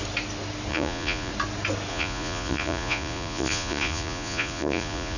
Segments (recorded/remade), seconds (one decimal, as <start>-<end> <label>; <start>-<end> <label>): 0.0-0.7 recorded; 0.7-1.3 remade; 1.3-1.9 recorded; 1.9-5.2 remade